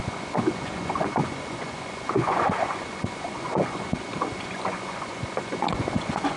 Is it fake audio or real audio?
fake